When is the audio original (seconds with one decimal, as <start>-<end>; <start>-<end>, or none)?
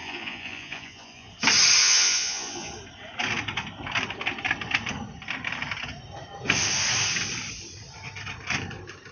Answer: 1.3-1.8; 2.7-9.1